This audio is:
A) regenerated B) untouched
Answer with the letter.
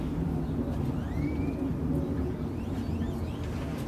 B